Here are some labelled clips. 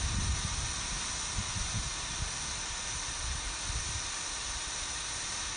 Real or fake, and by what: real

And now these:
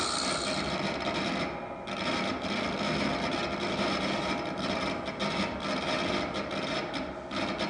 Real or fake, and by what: real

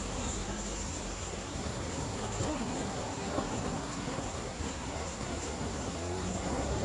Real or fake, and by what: fake, codec, SNAC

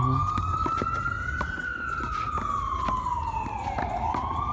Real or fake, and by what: real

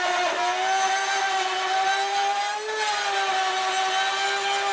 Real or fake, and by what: real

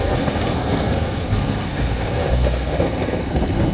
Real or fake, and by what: fake, codec, SNAC